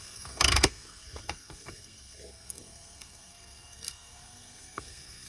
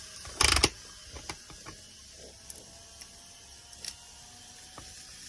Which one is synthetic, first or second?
first